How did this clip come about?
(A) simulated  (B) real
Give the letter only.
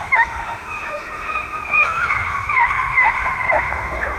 A